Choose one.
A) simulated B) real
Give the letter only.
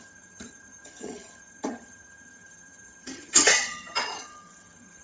A